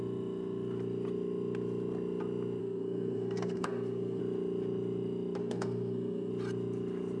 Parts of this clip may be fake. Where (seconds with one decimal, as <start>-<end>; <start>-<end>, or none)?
2.6-4.2; 5.4-6.3